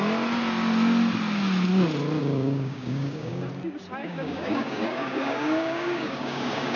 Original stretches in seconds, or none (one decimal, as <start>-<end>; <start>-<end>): 0.0-2.2; 3.5-4.0